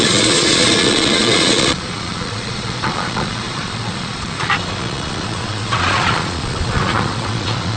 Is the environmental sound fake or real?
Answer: fake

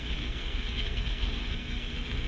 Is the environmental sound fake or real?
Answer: fake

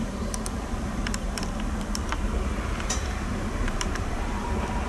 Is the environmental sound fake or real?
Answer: fake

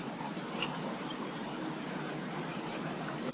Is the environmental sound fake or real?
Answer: real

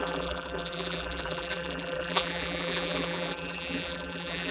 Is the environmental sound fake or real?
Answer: fake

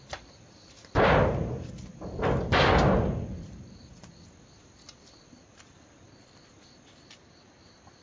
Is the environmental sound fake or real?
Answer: real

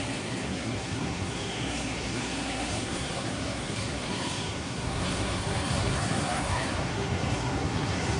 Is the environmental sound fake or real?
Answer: fake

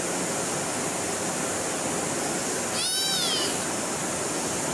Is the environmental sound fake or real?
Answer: real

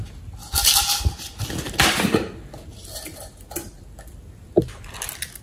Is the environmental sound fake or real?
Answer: real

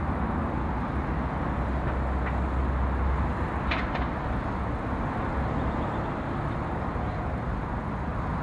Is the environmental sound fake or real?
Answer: real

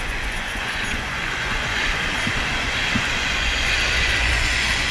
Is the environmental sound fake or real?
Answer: fake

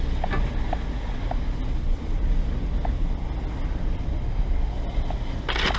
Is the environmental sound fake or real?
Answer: real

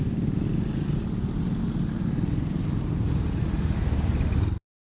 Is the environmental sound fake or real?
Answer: real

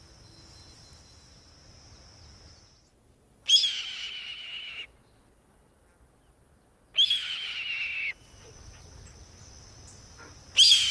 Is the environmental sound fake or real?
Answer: real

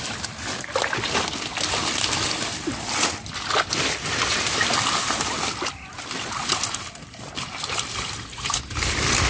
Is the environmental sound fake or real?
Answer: real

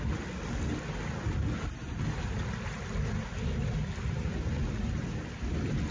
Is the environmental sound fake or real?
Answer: real